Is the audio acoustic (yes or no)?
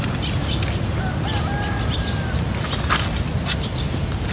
yes